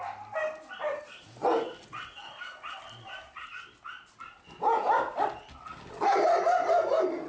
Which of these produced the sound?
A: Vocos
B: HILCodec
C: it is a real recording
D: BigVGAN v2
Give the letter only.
C